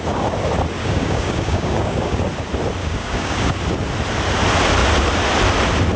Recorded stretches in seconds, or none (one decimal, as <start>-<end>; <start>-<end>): 0.0-0.8; 2.2-2.8; 3.6-6.0